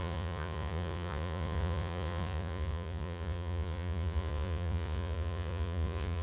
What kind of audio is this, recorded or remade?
remade